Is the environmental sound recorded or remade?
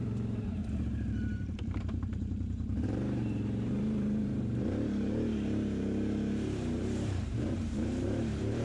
remade